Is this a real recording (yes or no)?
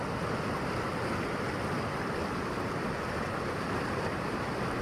yes